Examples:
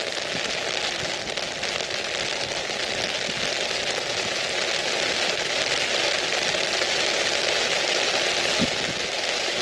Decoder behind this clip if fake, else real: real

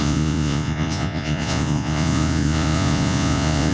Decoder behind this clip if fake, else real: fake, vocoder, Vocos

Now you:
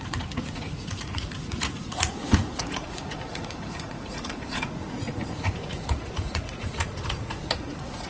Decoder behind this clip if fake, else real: fake, vocoder, Vocos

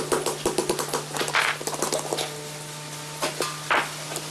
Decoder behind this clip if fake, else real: real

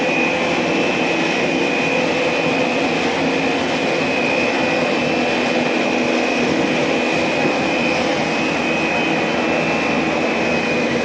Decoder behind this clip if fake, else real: real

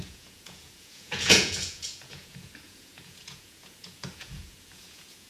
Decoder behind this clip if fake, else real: fake, vocoder, Vocos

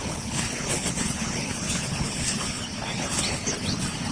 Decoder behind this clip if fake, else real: fake, codec, HILCodec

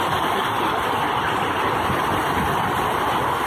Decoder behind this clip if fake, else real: real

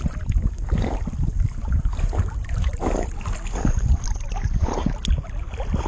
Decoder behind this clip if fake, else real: real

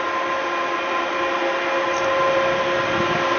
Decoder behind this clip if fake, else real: real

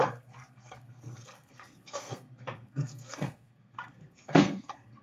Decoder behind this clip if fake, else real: fake, codec, SNAC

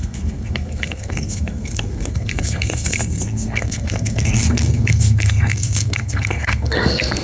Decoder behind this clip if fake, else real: fake, codec, SNAC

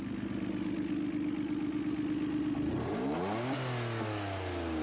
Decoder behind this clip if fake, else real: real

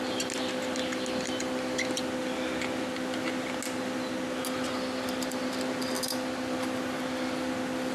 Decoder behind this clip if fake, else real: real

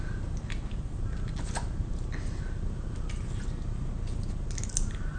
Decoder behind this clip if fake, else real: real